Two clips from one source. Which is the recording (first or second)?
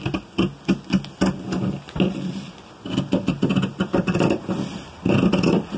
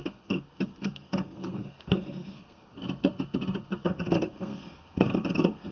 first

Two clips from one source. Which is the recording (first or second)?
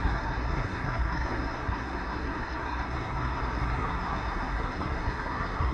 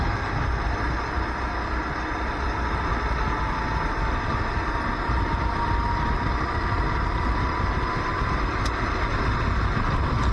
second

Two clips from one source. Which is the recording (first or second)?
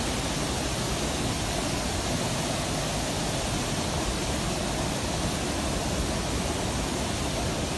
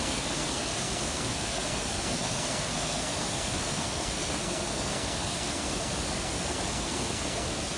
first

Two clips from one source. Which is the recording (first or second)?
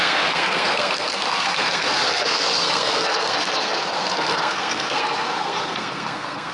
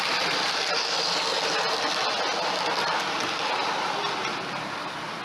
second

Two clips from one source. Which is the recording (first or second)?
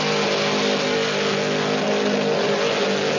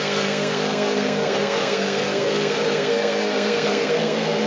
first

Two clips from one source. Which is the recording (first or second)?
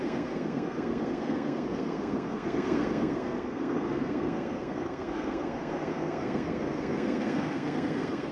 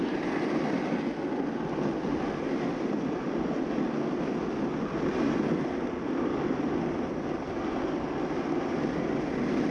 second